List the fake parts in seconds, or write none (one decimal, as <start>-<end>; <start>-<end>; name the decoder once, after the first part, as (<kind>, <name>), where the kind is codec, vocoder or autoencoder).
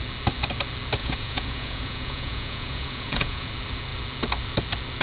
1.0-3.5 (vocoder, Vocos)